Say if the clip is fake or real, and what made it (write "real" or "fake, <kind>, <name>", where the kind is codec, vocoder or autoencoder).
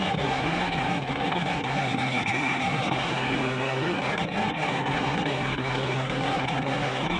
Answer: fake, codec, SNAC